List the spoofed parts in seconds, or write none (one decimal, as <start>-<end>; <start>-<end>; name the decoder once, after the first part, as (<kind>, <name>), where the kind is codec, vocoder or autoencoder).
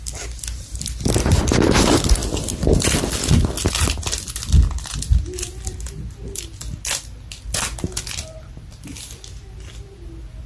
none